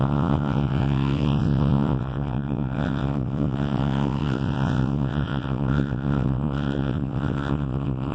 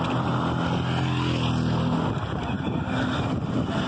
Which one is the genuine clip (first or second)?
second